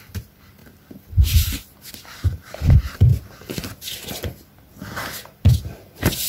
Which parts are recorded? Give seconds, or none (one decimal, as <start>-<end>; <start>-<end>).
0.6-1.9; 3.1-6.3